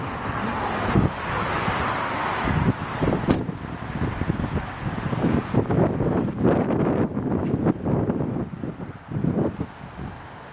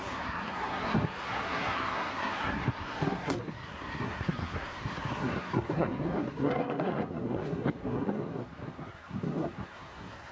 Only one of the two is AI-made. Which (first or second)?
second